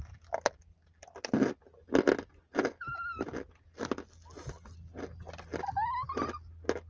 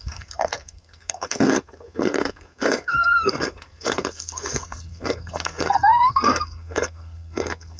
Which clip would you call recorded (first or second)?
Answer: first